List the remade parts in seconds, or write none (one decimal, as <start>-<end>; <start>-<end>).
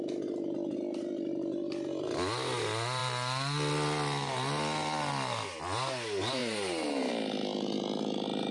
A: 6.4-7.1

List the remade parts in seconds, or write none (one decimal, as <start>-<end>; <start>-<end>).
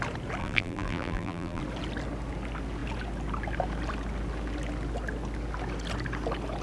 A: 0.4-1.6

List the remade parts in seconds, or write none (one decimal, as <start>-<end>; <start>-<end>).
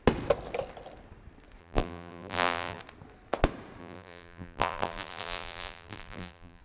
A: 1.6-2.8; 3.8-6.6